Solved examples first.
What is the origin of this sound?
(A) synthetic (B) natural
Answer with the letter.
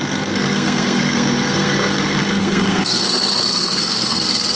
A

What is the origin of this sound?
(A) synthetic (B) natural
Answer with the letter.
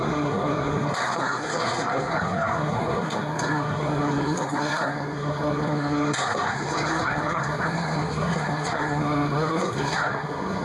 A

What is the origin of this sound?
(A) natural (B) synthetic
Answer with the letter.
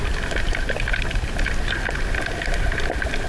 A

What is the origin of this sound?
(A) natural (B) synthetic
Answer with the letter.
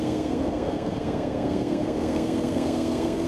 B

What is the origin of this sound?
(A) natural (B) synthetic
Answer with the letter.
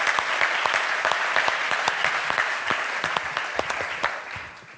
A